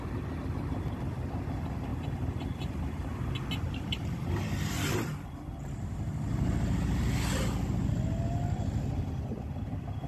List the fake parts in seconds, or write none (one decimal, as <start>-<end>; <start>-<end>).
none